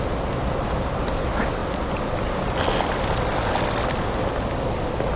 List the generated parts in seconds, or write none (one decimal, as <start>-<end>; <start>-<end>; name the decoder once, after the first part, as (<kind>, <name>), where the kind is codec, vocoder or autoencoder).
none